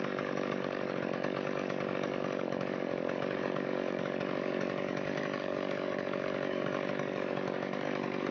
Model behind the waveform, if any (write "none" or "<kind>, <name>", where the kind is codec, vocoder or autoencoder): codec, DAC